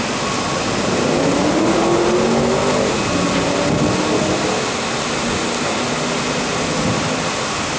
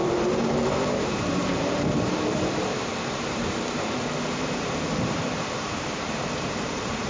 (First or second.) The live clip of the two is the first